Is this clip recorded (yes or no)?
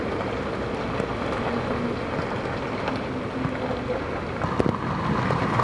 yes